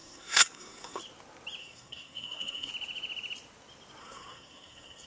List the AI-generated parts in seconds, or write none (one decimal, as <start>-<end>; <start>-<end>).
0.0-1.0; 1.6-2.7; 4.0-5.1